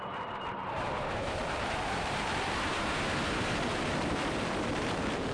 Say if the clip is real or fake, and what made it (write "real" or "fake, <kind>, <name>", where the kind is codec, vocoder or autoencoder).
fake, vocoder, BigVGAN v2